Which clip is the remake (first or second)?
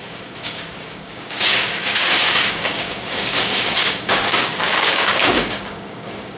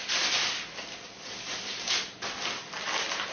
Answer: first